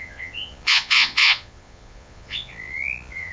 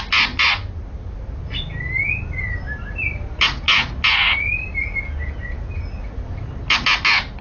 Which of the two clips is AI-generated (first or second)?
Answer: first